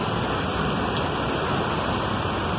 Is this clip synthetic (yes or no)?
no